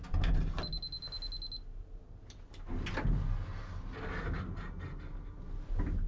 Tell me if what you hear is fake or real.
real